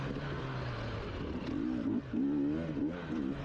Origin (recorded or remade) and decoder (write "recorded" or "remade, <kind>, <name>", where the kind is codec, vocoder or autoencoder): recorded